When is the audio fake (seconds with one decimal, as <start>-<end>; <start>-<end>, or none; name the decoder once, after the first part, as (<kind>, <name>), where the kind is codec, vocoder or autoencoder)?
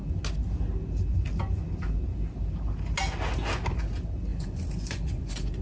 4.3-5.6 (vocoder, Vocos)